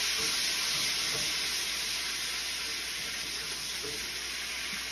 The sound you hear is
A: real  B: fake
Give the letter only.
A